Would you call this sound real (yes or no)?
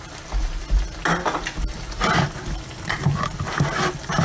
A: yes